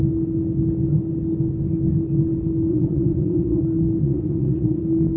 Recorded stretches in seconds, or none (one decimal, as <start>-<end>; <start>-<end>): 0.0-2.7; 3.6-4.0; 4.8-5.2